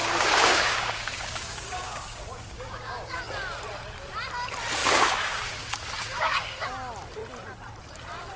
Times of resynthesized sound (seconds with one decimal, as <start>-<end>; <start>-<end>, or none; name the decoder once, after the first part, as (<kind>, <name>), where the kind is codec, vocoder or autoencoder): 0.0-3.2 (codec, DAC); 4.8-6.7